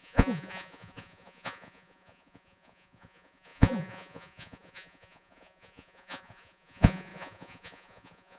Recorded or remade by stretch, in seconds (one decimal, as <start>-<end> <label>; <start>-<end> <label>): 0.0-8.4 remade